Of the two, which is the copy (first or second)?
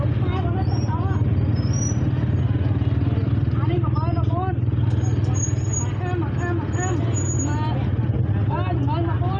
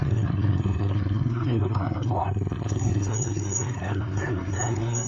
second